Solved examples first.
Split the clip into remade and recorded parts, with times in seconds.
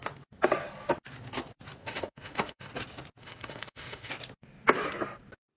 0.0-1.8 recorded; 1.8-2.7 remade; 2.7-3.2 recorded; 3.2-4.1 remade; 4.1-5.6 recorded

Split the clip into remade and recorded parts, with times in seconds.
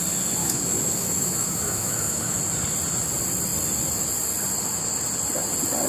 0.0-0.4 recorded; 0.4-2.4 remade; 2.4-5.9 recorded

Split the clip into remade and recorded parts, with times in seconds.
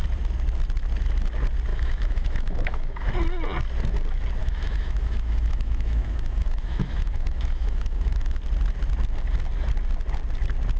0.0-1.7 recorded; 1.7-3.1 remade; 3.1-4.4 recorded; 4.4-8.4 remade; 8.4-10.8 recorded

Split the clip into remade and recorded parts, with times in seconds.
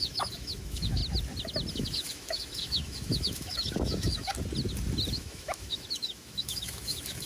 0.0-1.0 remade; 1.0-1.7 recorded; 1.7-4.3 remade; 4.3-5.1 recorded; 5.1-7.3 remade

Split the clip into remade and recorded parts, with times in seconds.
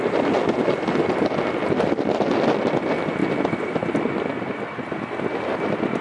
0.0-6.0 recorded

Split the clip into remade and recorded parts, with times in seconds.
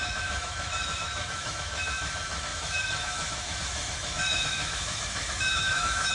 0.0-6.1 remade